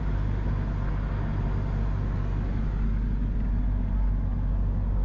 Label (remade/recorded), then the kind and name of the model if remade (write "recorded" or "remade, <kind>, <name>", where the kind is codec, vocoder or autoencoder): recorded